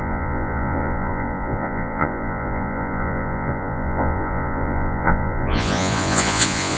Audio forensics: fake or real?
fake